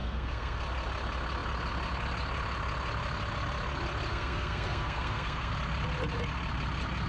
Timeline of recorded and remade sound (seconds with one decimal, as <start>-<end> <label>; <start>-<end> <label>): 0.0-0.6 remade; 0.6-4.1 recorded; 4.1-5.5 remade; 5.5-7.1 recorded